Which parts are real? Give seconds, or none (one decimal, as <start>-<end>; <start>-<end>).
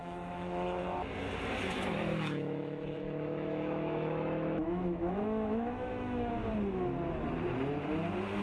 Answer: 0.8-2.1; 6.3-8.4